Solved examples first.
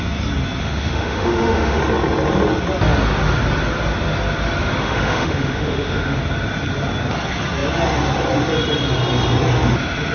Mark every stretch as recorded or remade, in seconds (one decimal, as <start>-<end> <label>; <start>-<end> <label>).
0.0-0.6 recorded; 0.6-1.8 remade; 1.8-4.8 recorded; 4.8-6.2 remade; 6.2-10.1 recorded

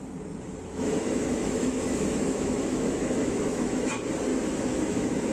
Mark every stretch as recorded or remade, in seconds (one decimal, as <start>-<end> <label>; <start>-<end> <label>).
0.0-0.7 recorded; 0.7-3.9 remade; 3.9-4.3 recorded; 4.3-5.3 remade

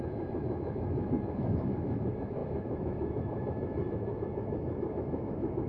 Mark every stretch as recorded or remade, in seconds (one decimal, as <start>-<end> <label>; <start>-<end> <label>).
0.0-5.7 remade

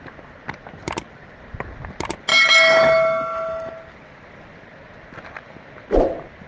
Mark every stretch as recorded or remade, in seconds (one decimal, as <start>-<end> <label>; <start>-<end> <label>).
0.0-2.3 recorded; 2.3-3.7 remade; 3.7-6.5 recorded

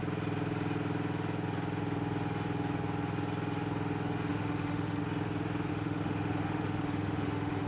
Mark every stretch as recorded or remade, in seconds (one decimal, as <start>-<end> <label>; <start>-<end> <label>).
0.0-4.3 recorded; 4.3-5.0 remade; 5.0-5.7 recorded; 5.7-7.7 remade

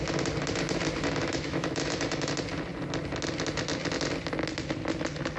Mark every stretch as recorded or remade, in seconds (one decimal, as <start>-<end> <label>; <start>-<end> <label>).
0.0-1.2 recorded; 1.2-2.3 remade; 2.3-5.4 recorded